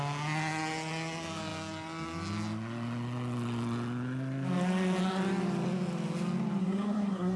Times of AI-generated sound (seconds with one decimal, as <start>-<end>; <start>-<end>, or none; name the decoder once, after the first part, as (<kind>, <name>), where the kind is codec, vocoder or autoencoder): 6.6-7.4 (codec, SNAC)